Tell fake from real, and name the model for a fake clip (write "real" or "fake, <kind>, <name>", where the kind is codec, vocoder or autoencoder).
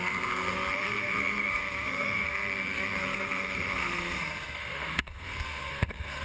fake, codec, SNAC